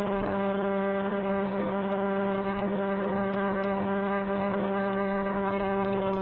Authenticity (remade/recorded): remade